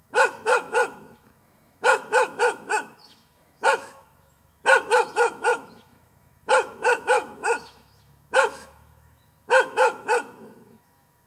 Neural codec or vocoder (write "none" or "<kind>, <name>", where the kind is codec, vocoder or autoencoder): autoencoder, DAC-VAE